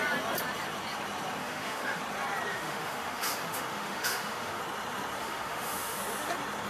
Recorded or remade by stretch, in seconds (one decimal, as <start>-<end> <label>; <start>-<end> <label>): 0.0-1.4 recorded; 1.4-2.0 remade; 2.0-2.5 recorded; 2.5-4.6 remade; 4.6-5.2 recorded; 5.2-6.0 remade; 6.0-6.7 recorded